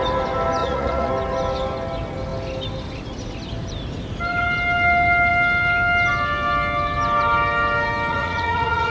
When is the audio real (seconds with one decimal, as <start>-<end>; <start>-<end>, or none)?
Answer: 0.0-0.6; 1.1-8.1